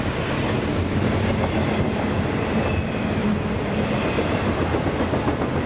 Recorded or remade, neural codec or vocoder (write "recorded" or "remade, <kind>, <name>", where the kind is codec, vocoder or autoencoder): recorded